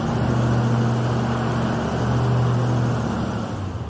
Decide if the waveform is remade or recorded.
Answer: recorded